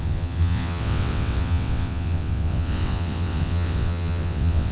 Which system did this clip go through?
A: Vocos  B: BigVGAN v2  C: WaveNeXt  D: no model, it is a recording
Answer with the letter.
C